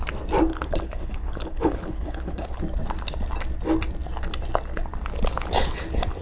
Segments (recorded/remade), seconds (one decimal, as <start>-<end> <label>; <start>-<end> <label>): 0.0-0.5 recorded; 0.5-2.6 remade; 2.6-6.2 recorded